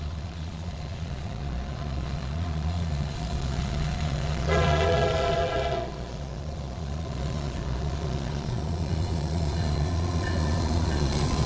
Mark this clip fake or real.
fake